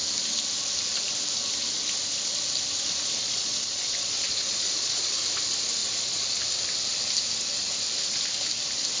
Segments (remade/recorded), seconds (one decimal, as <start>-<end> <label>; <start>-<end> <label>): 0.0-3.2 recorded; 3.2-5.1 remade; 5.1-5.8 recorded; 5.8-6.3 remade; 6.3-9.0 recorded